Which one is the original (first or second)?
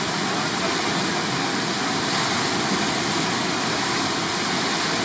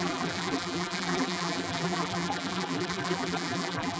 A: first